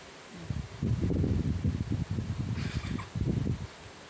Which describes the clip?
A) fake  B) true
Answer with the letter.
B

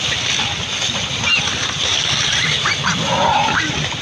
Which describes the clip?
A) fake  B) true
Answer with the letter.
B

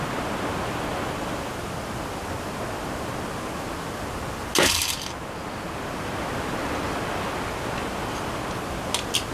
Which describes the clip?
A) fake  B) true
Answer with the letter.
B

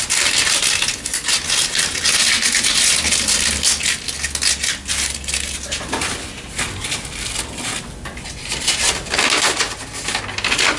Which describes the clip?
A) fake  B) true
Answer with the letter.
B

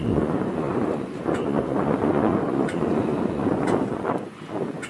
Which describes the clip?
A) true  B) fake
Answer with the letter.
B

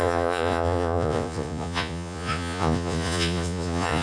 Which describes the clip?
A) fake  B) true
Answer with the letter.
A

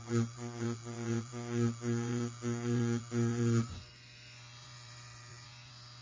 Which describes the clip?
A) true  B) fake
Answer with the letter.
B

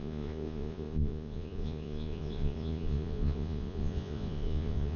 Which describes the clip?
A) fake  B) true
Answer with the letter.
A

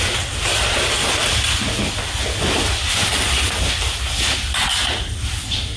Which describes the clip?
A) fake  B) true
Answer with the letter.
B